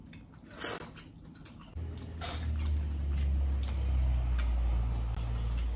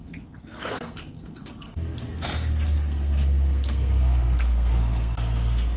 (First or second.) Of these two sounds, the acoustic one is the first